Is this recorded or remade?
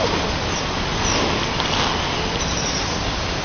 recorded